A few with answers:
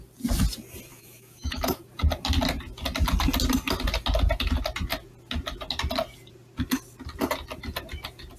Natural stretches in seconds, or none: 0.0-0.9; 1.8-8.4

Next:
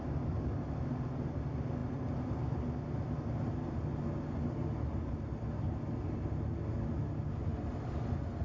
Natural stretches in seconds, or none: 0.0-8.4

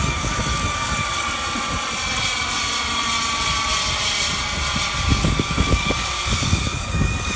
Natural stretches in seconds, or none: 0.9-5.1

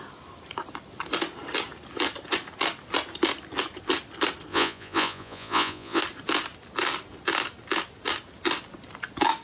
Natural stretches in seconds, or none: 0.0-4.5; 6.0-9.4

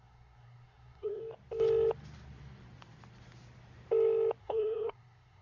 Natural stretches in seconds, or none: 1.2-4.4

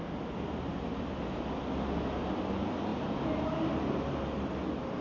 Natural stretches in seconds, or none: 0.0-5.0

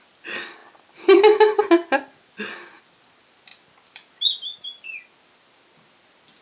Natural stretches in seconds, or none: 0.0-6.4